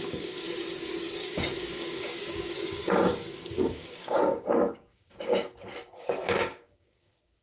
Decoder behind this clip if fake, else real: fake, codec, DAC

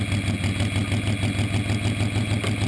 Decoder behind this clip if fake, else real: real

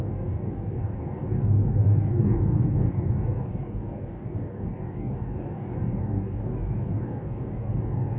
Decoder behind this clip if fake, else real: fake, codec, DAC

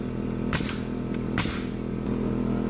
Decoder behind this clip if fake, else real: real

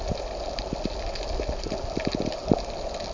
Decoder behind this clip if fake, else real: real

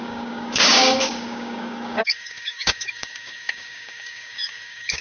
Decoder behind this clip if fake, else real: fake, codec, DAC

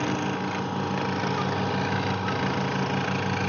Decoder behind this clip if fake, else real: real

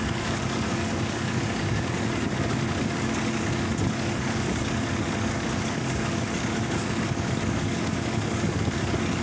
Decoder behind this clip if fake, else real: fake, codec, DAC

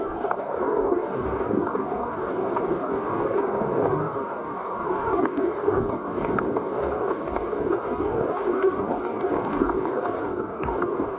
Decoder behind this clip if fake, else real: fake, codec, DAC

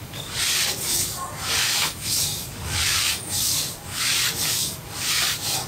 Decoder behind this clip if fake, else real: fake, codec, DAC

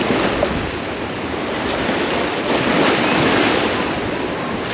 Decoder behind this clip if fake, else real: real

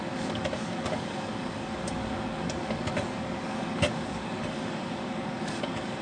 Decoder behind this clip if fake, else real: fake, codec, DAC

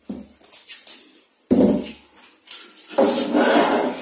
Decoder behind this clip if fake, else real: real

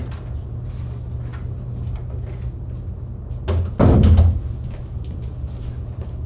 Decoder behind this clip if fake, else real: real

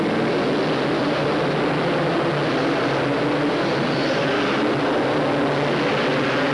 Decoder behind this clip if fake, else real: real